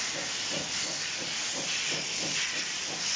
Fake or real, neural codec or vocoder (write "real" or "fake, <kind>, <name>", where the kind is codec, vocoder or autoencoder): real